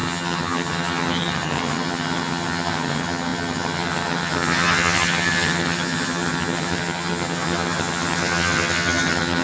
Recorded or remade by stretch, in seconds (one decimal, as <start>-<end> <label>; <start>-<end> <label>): 0.0-9.4 remade